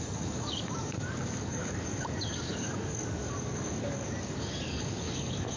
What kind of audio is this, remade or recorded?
remade